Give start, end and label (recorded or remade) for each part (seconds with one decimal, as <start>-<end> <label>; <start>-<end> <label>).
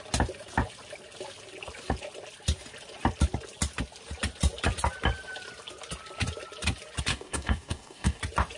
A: 0.0-7.1 recorded; 7.1-8.2 remade; 8.2-8.6 recorded